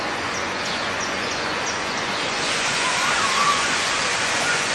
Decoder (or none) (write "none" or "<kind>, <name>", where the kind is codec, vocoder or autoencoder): vocoder, Vocos